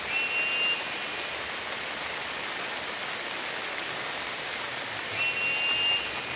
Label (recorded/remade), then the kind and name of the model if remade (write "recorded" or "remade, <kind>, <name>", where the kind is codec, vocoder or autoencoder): recorded